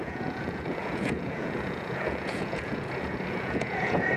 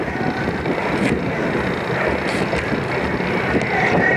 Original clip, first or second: second